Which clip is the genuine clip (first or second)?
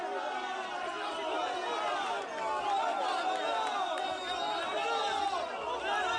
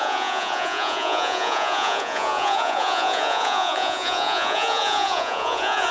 first